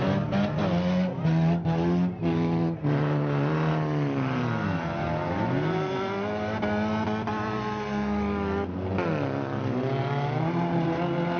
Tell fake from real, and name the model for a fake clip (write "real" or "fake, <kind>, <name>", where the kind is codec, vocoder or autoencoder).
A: real